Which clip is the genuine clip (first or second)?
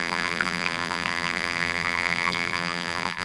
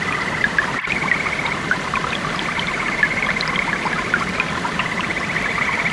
second